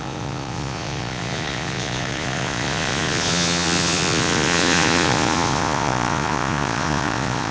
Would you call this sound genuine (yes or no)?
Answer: no